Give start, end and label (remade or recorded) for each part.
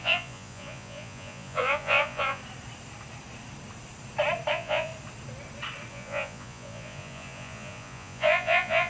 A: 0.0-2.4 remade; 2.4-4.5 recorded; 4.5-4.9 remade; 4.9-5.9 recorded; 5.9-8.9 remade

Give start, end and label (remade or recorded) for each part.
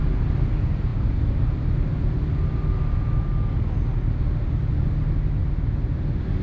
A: 0.0-6.4 recorded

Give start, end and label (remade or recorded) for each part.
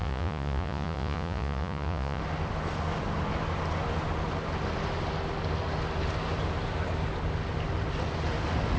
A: 0.0-2.2 remade; 2.2-8.8 recorded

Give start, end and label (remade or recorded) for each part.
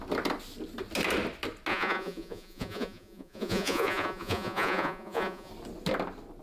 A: 0.0-1.7 recorded; 1.7-5.5 remade; 5.5-6.4 recorded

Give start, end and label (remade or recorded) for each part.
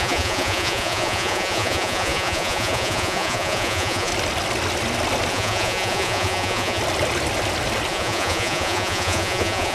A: 0.0-4.1 remade; 4.1-5.3 recorded; 5.3-6.8 remade; 6.8-7.9 recorded; 7.9-9.7 remade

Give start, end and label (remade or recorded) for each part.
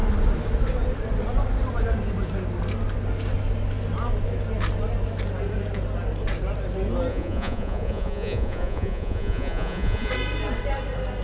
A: 0.0-7.1 recorded; 7.1-10.1 remade; 10.1-11.2 recorded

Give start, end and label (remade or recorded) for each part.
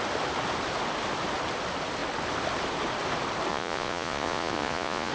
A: 0.0-3.5 recorded; 3.5-5.1 remade